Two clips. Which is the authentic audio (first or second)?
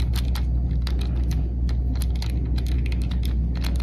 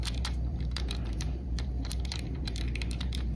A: first